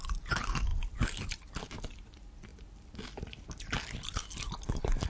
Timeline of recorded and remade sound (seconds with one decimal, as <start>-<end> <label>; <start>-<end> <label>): 0.0-5.1 recorded